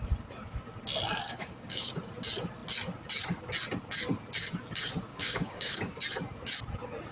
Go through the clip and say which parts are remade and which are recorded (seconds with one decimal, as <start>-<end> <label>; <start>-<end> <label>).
0.0-1.3 recorded; 1.3-1.9 remade; 1.9-5.1 recorded; 5.1-5.9 remade; 5.9-7.1 recorded